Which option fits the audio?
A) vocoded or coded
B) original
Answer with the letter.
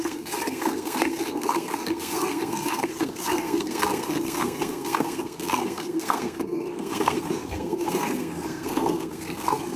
A